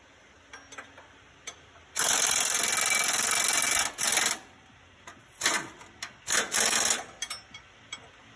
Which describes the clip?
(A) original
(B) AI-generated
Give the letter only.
A